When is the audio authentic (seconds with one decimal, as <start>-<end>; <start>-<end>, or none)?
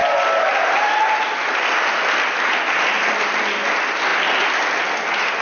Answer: 0.0-5.4